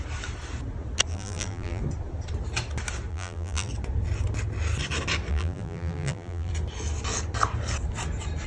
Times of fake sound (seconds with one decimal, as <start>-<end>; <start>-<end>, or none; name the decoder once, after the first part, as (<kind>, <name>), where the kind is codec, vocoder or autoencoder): 1.1-1.8 (vocoder, BigVGAN v2); 3.1-3.7; 5.3-6.5